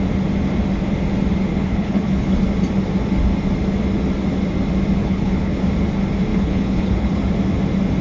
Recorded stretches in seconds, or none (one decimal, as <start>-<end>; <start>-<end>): 0.0-1.5; 2.4-5.0; 5.6-6.3; 7.2-8.0